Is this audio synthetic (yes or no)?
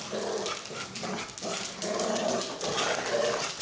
no